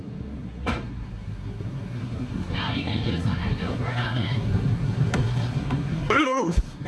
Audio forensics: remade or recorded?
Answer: remade